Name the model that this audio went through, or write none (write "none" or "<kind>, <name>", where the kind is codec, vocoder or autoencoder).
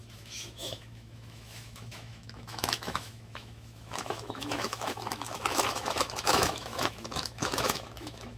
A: autoencoder, DAC-VAE